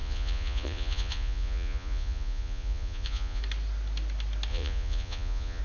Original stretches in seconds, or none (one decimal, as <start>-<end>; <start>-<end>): 3.4-4.5